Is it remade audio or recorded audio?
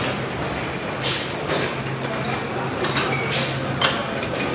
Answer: recorded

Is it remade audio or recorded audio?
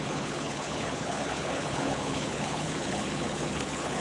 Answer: remade